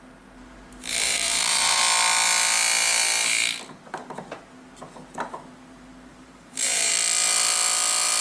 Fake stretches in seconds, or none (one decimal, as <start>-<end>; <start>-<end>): 0.9-1.8; 6.1-6.9